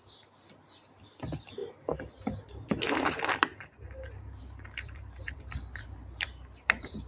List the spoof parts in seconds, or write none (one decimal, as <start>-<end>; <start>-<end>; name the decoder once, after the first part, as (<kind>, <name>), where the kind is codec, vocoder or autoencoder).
0.0-1.6 (vocoder, BigVGAN v2); 2.7-3.5; 4.4-7.1